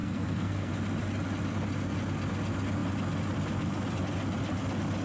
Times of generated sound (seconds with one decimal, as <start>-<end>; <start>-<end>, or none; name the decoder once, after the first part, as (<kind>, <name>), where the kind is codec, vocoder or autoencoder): 0.0-0.7 (codec, SNAC)